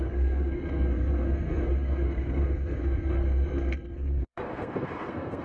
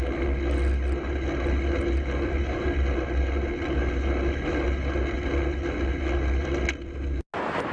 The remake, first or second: first